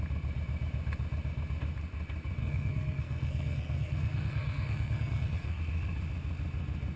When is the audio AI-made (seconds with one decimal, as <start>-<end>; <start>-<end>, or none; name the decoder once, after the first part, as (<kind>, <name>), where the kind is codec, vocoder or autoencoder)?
2.4-5.6 (codec, SNAC)